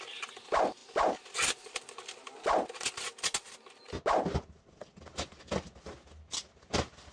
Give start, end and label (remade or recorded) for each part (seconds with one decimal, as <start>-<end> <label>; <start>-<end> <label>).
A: 0.0-7.1 recorded